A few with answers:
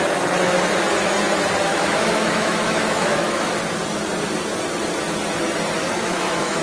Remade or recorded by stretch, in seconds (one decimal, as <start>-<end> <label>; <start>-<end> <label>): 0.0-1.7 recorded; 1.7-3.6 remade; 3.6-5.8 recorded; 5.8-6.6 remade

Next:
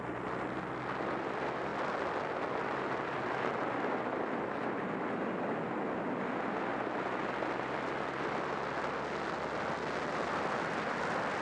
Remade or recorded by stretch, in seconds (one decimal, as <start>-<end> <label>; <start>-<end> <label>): 0.0-11.4 recorded

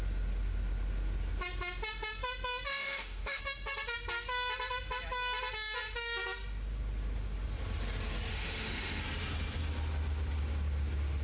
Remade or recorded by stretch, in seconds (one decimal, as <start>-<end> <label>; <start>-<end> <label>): 0.0-2.7 recorded; 2.7-3.4 remade; 3.4-8.3 recorded; 8.3-9.0 remade; 9.0-11.2 recorded